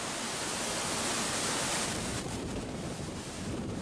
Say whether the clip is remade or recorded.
remade